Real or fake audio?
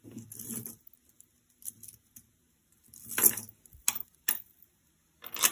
real